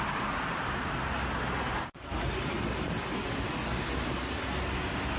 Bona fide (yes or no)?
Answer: yes